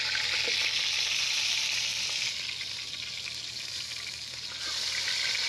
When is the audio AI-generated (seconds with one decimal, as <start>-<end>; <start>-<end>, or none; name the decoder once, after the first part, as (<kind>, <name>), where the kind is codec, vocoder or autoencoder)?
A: none

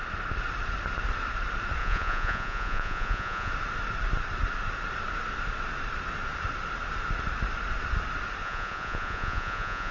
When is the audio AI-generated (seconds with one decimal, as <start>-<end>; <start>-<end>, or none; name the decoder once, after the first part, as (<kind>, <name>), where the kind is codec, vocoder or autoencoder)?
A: 1.8-3.5 (vocoder, Vocos); 8.4-9.9

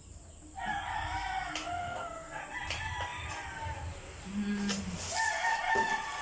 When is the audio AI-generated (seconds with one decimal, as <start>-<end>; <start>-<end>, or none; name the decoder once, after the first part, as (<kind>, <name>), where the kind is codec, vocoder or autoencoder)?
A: 1.8-2.4 (codec, SNAC)

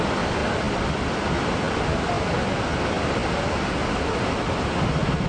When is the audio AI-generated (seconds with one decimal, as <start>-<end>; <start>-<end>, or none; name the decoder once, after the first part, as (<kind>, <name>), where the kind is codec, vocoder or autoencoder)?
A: none

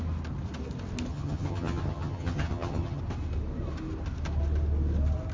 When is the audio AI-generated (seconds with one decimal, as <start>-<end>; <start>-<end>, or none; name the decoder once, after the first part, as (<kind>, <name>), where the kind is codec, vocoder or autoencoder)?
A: 1.1-3.0 (vocoder, HiFi-GAN)